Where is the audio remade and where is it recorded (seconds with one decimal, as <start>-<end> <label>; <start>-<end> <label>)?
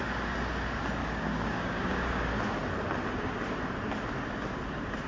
0.0-1.0 recorded; 1.0-2.2 remade; 2.2-5.1 recorded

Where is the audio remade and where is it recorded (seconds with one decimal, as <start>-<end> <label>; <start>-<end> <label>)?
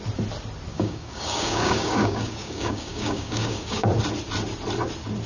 0.0-0.7 recorded; 0.7-3.9 remade; 3.9-5.3 recorded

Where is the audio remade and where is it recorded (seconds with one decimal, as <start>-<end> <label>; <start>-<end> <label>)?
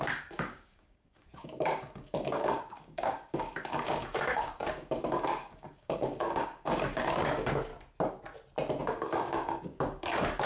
0.0-7.7 remade; 7.7-8.8 recorded; 8.8-10.5 remade